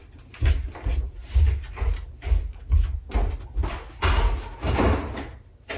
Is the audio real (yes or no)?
yes